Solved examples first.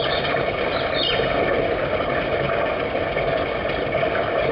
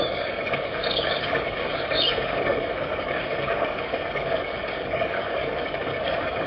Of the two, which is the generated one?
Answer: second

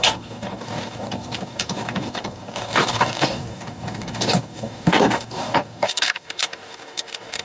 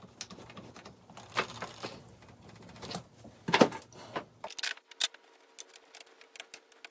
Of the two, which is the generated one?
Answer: first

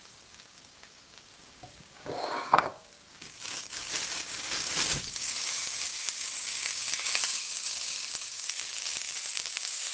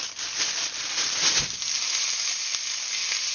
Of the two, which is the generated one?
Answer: first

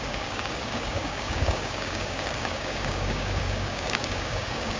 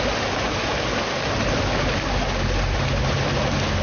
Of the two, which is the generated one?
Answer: first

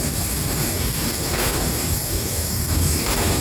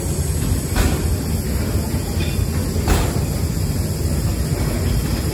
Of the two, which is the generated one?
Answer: first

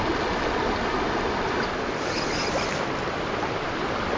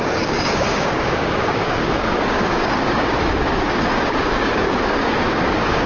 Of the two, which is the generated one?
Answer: second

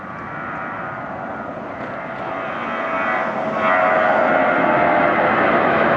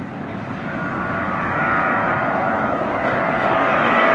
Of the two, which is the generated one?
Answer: second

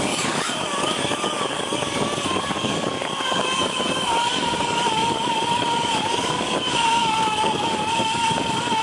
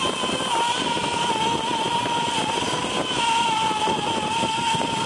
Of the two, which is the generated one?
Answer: first